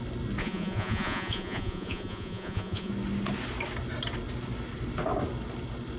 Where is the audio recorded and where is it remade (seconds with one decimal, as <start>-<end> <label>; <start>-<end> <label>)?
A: 0.0-0.4 recorded; 0.4-2.9 remade; 2.9-6.0 recorded